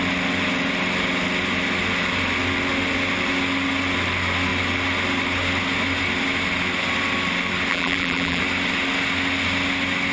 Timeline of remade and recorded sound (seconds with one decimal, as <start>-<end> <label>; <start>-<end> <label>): 0.0-7.7 recorded; 7.7-8.4 remade; 8.4-10.1 recorded